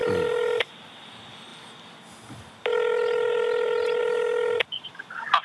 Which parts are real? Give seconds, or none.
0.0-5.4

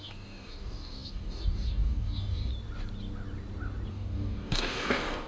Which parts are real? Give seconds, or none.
2.5-3.9

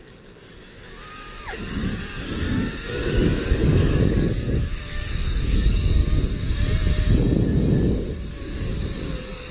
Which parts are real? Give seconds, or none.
6.0-8.3

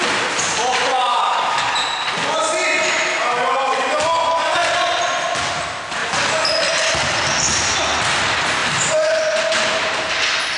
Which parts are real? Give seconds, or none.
0.0-1.1; 1.7-10.6

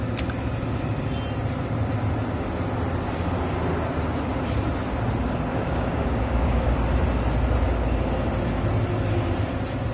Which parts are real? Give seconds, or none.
0.0-5.5; 6.7-9.9